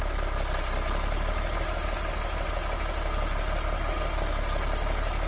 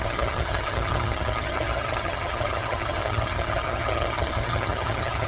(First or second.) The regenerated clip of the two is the second